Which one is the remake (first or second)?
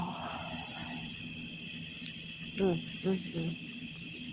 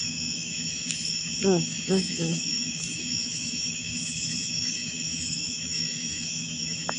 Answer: second